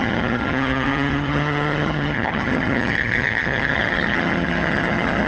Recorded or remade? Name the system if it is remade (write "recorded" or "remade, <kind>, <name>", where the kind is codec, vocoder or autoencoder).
remade, vocoder, HiFi-GAN